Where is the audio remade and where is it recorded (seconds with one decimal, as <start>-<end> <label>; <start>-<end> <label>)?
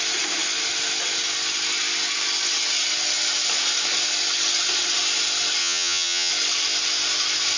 0.0-5.6 recorded; 5.6-6.3 remade; 6.3-7.6 recorded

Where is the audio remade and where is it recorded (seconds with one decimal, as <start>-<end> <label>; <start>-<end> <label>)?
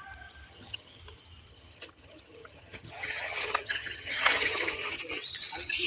0.0-0.5 recorded; 0.5-1.0 remade; 1.0-1.5 recorded; 1.5-5.0 remade; 5.0-5.9 recorded